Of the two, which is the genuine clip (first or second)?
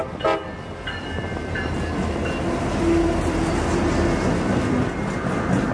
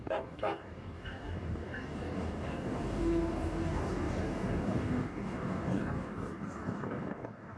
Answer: first